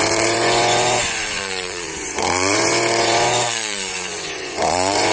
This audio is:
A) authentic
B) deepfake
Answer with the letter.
B